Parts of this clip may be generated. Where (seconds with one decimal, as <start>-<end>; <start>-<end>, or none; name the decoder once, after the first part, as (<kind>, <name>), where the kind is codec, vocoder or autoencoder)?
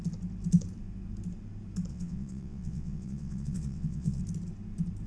1.9-4.2 (vocoder, WaveNeXt)